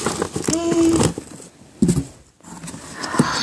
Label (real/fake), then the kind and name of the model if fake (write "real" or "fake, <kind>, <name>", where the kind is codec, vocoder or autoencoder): real